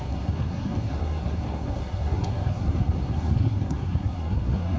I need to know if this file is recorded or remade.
remade